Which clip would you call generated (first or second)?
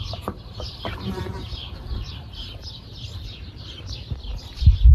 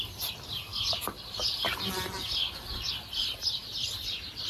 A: first